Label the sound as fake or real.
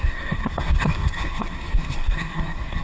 fake